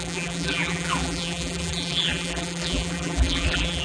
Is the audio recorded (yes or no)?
no